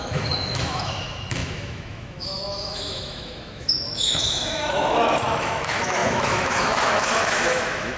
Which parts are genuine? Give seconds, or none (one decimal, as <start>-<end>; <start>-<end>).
none